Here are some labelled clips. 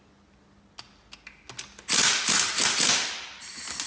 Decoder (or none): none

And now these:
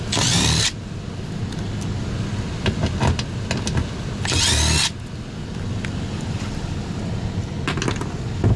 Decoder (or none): none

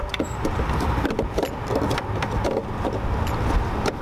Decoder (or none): none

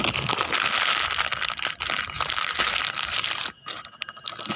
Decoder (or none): none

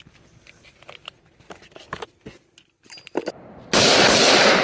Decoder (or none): none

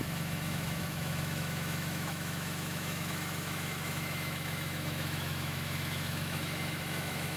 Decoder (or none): autoencoder, DAC-VAE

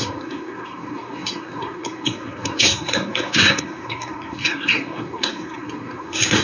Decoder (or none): codec, SNAC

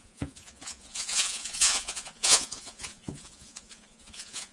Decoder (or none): vocoder, Vocos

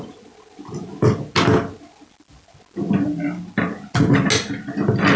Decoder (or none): none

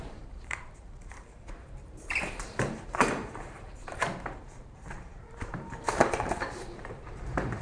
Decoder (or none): vocoder, BigVGAN v2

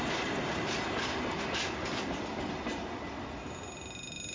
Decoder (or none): none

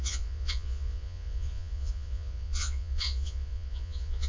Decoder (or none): vocoder, Vocos